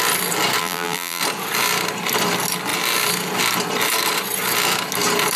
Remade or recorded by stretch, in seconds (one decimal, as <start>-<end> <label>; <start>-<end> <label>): 0.0-0.6 recorded; 0.6-1.2 remade; 1.2-5.4 recorded